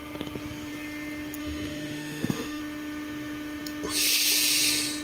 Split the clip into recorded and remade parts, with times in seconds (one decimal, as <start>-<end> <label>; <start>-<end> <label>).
0.0-1.4 recorded; 1.4-2.6 remade; 2.6-5.0 recorded